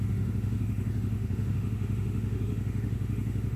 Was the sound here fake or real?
fake